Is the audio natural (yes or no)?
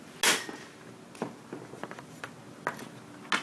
yes